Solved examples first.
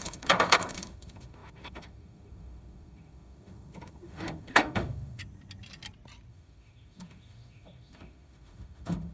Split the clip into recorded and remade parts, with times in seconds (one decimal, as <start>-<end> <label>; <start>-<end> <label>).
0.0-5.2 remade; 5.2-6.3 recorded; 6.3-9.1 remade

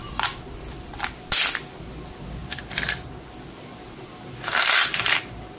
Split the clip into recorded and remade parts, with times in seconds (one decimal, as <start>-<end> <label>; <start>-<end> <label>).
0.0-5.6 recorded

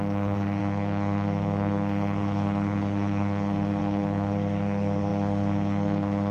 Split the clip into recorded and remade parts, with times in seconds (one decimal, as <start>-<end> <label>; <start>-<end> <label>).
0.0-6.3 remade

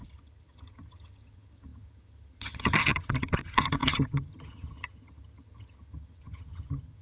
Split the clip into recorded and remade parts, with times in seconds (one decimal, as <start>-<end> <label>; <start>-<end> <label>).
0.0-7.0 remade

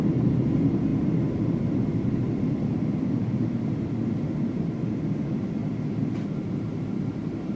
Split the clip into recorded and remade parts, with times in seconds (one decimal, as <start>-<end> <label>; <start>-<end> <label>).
0.0-5.6 remade; 5.6-7.1 recorded; 7.1-7.6 remade

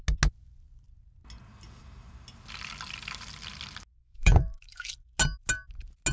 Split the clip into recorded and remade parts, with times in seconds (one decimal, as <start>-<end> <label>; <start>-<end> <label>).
0.0-3.9 recorded; 3.9-4.9 remade; 4.9-6.1 recorded